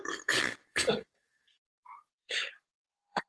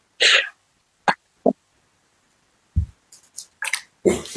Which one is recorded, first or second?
second